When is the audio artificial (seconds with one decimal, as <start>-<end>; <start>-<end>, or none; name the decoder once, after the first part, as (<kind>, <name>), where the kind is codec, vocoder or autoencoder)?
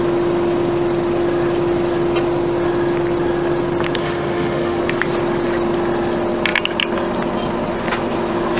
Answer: 4.0-4.8 (autoencoder, DAC-VAE)